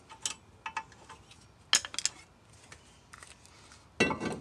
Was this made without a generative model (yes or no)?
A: yes